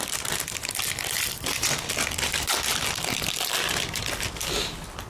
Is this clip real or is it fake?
fake